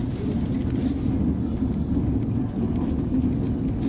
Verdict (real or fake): real